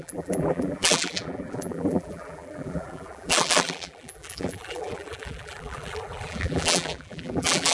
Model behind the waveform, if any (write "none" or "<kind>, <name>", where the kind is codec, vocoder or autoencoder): vocoder, BigVGAN v2